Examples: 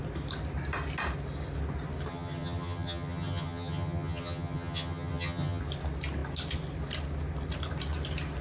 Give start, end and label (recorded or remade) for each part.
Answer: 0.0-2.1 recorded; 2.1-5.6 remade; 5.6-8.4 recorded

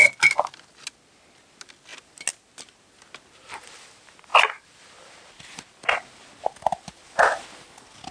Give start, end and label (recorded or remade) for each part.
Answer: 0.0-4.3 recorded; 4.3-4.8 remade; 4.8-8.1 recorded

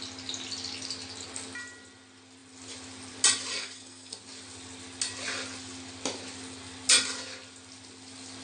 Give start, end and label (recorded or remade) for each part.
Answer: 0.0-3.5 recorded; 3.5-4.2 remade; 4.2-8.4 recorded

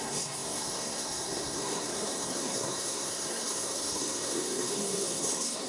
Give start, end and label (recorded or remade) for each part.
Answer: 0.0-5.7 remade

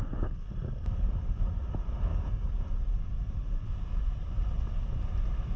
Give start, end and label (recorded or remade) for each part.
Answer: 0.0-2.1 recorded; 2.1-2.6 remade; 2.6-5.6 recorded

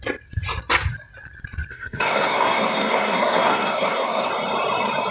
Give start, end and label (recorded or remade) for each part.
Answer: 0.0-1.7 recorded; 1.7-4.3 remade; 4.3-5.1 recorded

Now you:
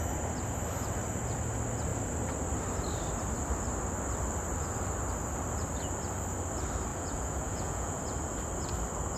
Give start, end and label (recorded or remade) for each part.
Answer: 0.0-6.9 recorded; 6.9-8.0 remade; 8.0-9.2 recorded